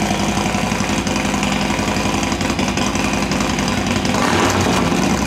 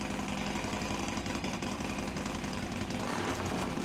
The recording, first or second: first